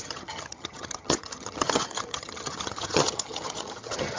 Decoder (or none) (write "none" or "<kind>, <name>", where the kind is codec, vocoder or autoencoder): vocoder, HiFi-GAN